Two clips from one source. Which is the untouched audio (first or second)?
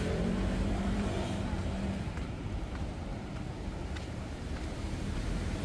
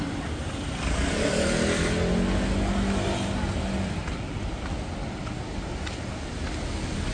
second